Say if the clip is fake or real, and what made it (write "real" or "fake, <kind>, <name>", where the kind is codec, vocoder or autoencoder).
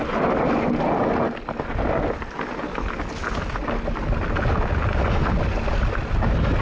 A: real